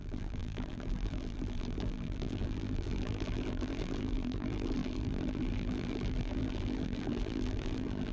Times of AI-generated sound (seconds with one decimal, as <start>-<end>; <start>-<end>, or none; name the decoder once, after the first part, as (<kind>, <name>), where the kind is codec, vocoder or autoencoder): 0.0-8.1 (vocoder, BigVGAN v2)